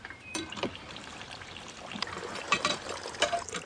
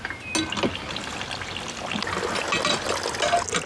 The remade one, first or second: first